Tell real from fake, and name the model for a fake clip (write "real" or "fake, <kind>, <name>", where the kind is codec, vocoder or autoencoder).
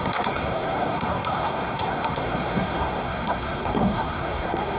fake, codec, SNAC